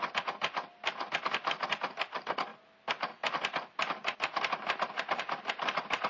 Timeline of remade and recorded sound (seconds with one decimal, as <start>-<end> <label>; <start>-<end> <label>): 0.0-6.1 recorded